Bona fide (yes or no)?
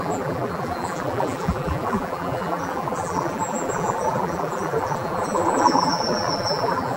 no